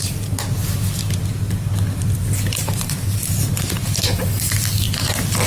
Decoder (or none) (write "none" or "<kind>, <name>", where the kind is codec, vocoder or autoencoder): none